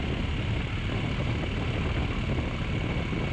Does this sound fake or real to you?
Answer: real